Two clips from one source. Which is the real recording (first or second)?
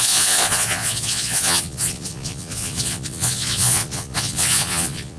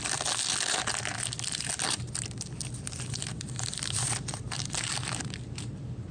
second